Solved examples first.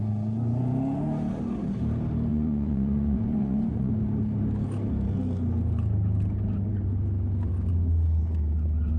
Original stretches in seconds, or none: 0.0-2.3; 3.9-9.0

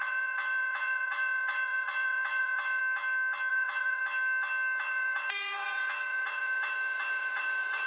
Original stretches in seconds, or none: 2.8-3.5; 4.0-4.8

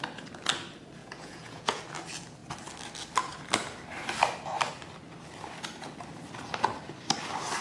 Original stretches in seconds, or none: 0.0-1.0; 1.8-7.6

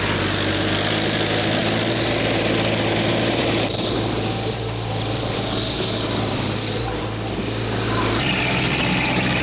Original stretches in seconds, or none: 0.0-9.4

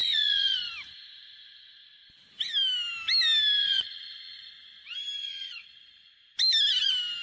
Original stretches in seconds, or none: 0.7-3.6; 4.5-5.2; 6.1-7.2

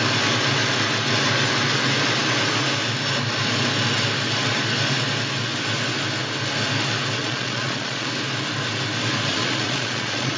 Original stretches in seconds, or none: 0.0-7.2; 8.1-9.3

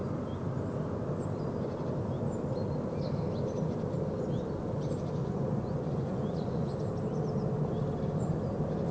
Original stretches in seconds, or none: 0.0-5.2; 6.7-8.9